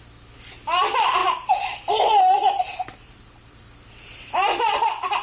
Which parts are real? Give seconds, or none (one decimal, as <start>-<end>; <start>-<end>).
0.0-1.2; 4.3-5.2